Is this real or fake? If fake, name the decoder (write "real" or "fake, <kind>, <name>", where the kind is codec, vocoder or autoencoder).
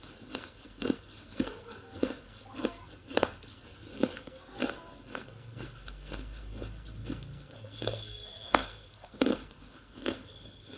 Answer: fake, codec, SNAC